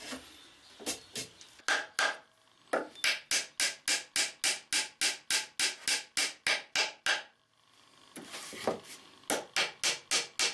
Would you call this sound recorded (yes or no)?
yes